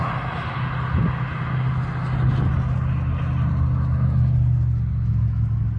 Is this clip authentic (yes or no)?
yes